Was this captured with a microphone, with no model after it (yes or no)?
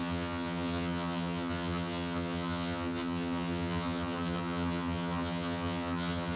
no